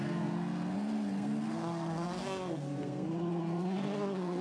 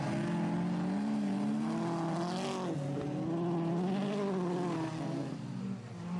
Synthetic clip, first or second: first